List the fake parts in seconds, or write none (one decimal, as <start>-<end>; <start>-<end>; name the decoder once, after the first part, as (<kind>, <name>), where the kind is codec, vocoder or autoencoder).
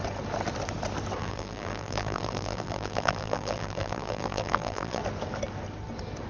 1.2-5.0 (vocoder, BigVGAN v2)